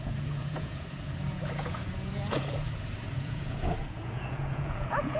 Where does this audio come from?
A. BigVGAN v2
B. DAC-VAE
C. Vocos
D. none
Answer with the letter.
C